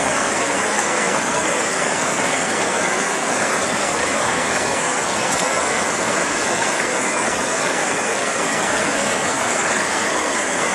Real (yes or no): no